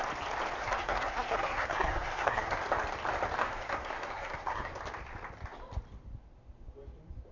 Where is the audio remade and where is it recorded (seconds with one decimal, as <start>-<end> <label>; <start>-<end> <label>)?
0.0-0.6 recorded; 0.6-2.6 remade; 2.6-3.4 recorded; 3.4-4.8 remade; 4.8-7.3 recorded